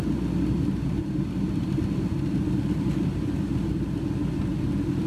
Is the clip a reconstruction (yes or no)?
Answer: no